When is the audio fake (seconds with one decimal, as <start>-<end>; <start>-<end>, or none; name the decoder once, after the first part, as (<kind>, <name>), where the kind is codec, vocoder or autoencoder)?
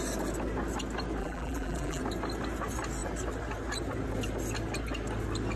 1.2-2.0 (vocoder, BigVGAN v2)